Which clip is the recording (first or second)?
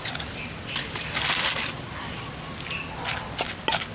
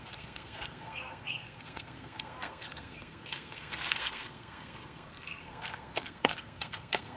first